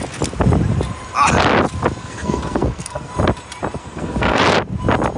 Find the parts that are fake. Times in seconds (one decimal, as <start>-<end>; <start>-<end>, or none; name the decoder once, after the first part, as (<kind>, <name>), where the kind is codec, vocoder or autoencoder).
2.0-3.1 (codec, SNAC); 3.8-4.4